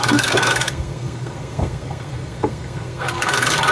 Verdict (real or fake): fake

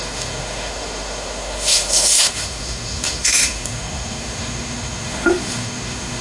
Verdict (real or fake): fake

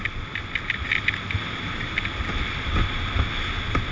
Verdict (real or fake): real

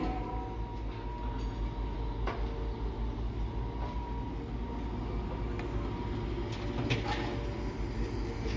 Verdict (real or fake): real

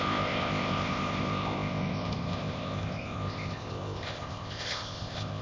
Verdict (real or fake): fake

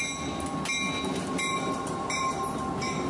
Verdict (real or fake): real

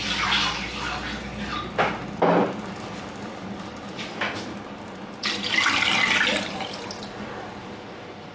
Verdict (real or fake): real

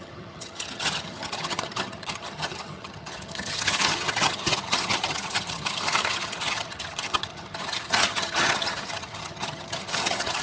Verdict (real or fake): fake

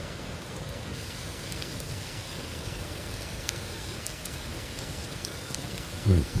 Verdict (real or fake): fake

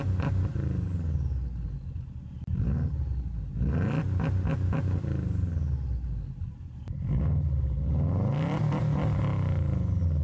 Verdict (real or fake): real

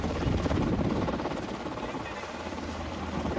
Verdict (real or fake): fake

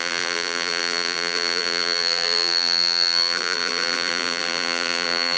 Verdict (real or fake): fake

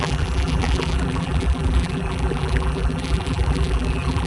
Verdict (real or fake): fake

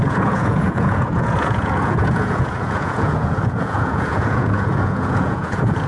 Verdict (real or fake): fake